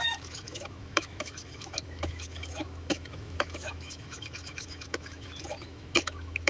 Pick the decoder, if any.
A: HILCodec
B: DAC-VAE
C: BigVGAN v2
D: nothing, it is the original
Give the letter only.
B